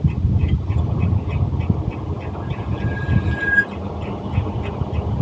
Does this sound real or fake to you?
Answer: real